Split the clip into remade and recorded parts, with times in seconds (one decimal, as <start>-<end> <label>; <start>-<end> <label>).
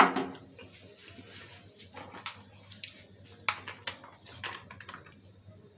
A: 0.0-5.8 recorded